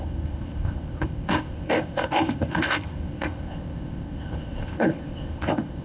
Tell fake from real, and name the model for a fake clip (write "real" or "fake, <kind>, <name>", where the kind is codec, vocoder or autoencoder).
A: fake, codec, ZipCodec